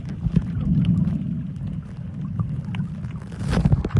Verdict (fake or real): real